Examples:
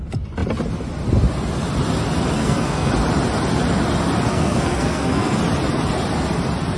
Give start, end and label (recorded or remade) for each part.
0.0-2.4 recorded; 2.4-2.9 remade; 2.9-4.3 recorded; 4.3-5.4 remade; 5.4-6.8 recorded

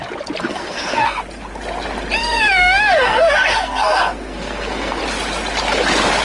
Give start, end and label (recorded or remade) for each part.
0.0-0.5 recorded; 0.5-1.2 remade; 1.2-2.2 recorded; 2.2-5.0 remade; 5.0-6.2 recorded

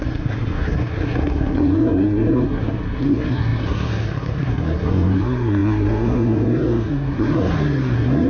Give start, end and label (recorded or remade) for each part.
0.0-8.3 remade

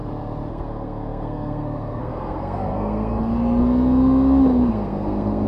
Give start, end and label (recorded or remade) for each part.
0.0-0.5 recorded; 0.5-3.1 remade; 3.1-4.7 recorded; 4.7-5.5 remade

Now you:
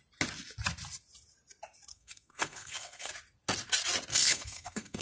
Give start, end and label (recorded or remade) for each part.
0.0-1.9 recorded; 1.9-3.1 remade; 3.1-4.1 recorded; 4.1-5.0 remade

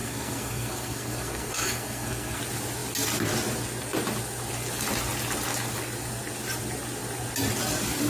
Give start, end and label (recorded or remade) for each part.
0.0-2.4 remade; 2.4-8.1 recorded